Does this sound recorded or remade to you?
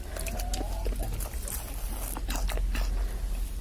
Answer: recorded